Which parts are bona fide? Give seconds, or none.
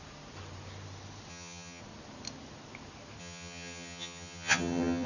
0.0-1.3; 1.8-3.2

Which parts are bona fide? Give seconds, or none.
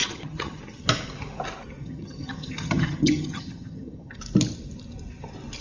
0.6-1.8; 4.1-5.6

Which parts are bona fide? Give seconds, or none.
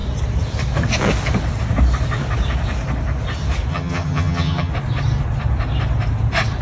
0.0-3.7; 4.7-6.6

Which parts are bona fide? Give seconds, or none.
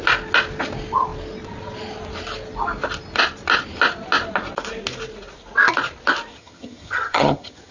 0.0-6.3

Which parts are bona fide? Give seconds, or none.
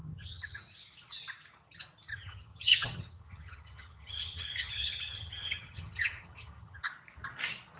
0.6-2.1; 6.8-7.8